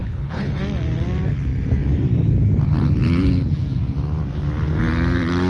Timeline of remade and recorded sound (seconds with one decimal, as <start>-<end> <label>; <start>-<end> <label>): 0.0-0.6 remade; 0.6-5.5 recorded